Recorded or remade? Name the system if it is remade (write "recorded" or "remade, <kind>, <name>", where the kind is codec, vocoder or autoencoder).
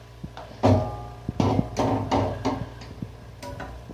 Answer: recorded